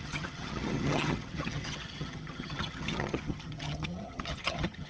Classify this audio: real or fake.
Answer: fake